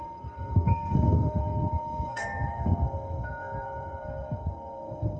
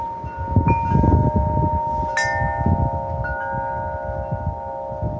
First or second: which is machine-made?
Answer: first